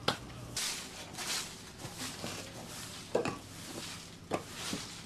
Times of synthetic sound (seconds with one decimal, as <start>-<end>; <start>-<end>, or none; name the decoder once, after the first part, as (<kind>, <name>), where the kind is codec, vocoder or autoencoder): none